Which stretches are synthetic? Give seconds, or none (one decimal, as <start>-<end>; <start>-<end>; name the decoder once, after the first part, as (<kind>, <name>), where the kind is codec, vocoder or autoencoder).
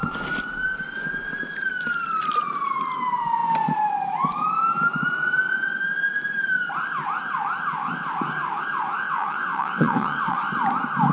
9.0-10.5 (vocoder, WaveNeXt)